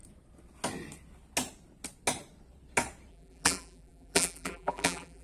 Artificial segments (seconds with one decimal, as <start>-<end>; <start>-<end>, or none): 3.1-5.2